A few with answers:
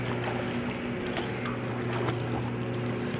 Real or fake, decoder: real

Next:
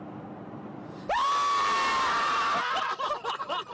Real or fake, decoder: real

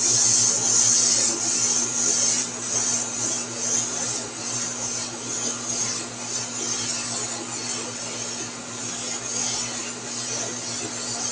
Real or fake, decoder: real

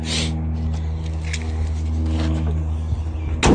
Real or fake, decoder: real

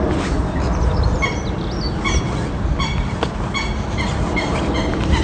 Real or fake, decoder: real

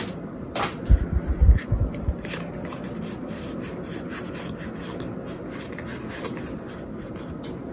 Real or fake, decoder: real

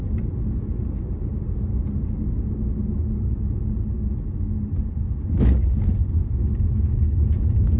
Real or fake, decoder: real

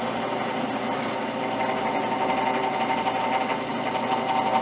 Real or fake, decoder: real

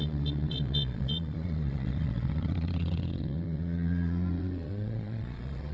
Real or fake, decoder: fake, vocoder, Vocos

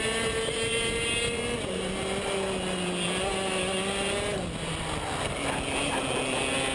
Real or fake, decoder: real